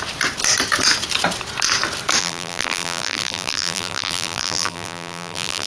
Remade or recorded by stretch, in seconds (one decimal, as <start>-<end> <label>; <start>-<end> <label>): 0.0-2.2 recorded; 2.2-5.7 remade